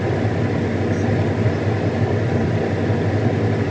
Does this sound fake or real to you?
real